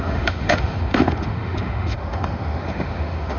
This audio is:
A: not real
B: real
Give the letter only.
A